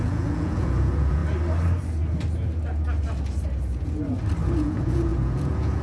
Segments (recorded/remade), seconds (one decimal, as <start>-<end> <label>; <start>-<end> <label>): 0.0-1.2 remade; 1.2-4.6 recorded; 4.6-5.8 remade